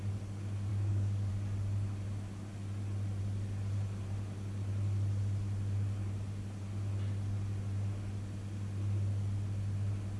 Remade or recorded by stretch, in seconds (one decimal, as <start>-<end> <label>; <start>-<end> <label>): 0.0-0.7 recorded; 0.7-1.3 remade; 1.3-10.2 recorded